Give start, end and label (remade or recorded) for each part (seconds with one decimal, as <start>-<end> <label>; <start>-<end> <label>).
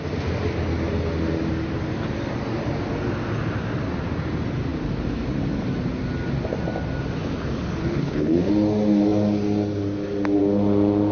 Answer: 0.0-7.8 recorded; 7.8-8.5 remade; 8.5-11.1 recorded